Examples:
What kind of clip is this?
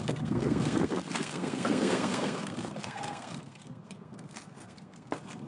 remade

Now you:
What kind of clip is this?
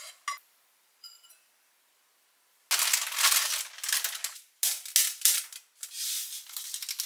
recorded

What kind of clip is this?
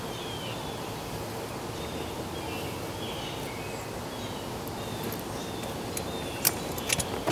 recorded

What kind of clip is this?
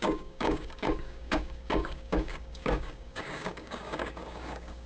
remade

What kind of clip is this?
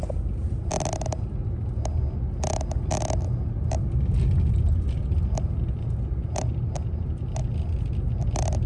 recorded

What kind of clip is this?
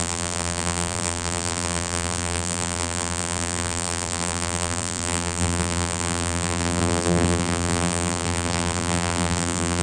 remade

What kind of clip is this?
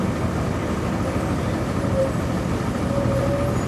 recorded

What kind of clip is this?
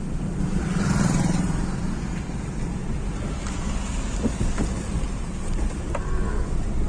recorded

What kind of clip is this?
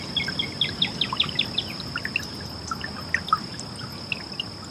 recorded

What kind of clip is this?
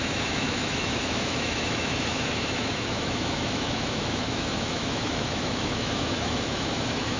remade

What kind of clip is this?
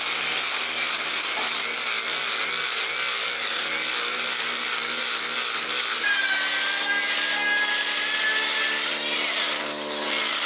recorded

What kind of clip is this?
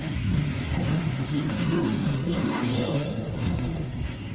remade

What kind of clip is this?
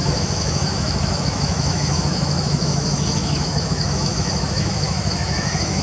remade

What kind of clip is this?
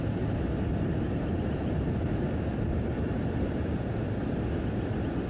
recorded